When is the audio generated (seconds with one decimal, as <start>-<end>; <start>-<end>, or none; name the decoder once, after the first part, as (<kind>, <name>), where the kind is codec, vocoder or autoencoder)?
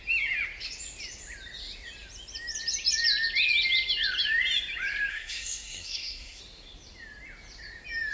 5.1-6.4 (codec, SNAC)